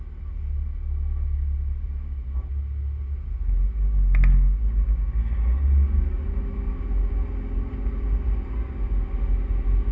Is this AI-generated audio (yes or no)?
no